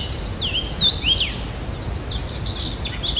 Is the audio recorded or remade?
recorded